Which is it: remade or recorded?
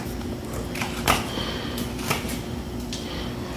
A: recorded